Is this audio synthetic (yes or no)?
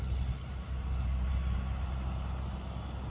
no